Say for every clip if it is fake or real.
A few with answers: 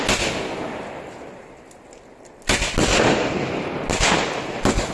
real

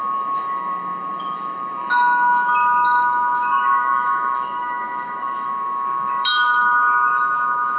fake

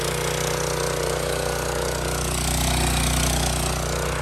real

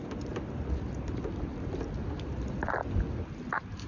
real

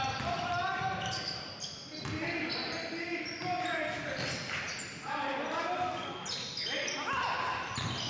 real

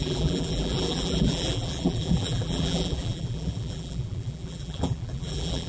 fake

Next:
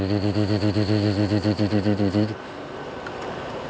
real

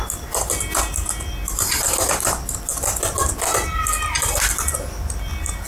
real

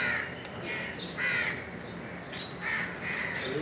real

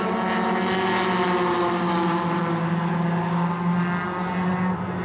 real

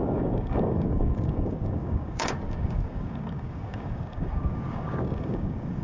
fake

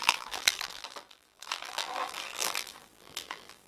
fake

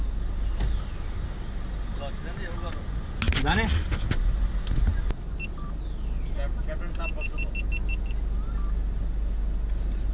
real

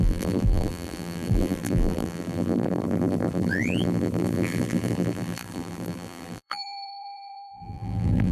fake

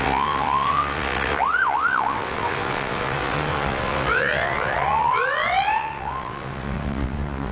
fake